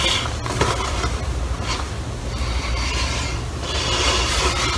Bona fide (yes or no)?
yes